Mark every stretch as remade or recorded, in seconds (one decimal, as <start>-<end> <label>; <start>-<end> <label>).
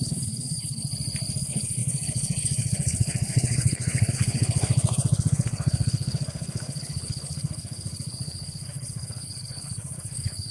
0.0-0.9 remade; 0.9-1.4 recorded; 1.4-10.5 remade